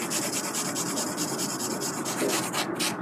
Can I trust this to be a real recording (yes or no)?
no